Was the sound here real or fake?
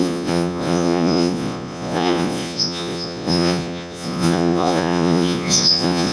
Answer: fake